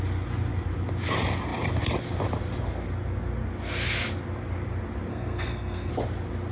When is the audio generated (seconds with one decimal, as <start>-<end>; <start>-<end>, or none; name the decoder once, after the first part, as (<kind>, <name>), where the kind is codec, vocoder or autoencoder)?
5.1-5.9 (codec, SNAC)

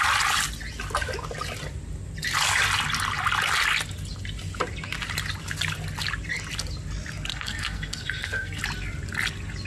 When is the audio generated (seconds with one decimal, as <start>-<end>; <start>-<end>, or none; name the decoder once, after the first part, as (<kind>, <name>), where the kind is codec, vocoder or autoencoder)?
7.3-8.6 (codec, SNAC)

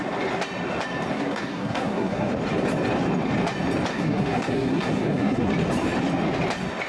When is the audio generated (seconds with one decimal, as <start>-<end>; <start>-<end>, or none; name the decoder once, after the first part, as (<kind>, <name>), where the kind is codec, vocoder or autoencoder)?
1.1-2.3 (codec, SNAC); 3.9-5.5